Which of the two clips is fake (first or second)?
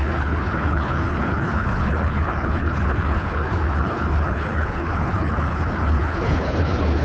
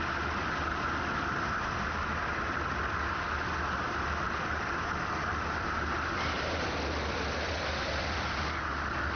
first